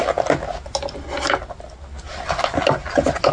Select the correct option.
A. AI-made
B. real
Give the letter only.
B